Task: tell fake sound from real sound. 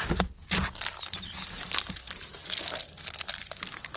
real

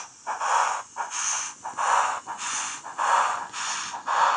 fake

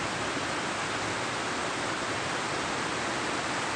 real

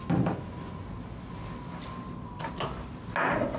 real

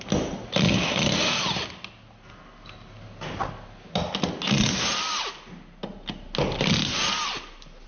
real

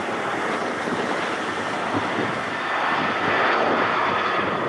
real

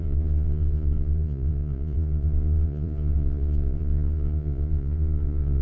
fake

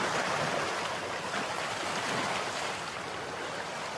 real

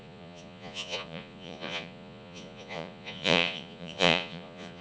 fake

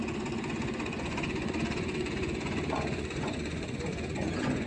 fake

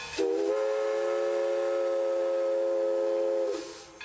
real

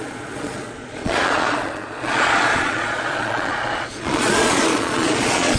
fake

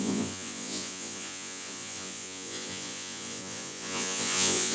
fake